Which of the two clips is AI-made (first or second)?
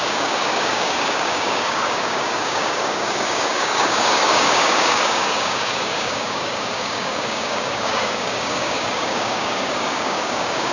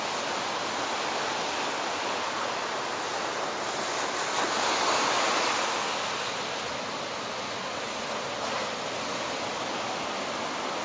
first